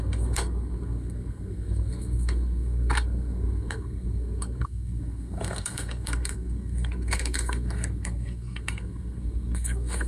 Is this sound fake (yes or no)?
yes